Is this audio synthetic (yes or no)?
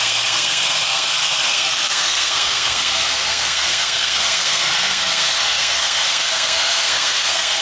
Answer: yes